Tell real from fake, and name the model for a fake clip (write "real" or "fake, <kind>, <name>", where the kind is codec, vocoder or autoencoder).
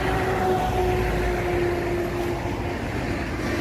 real